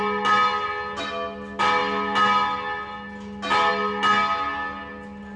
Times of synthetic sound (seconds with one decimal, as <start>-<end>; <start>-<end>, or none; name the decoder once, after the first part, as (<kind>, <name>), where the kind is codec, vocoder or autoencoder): none